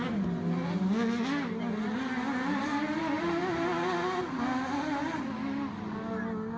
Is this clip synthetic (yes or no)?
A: no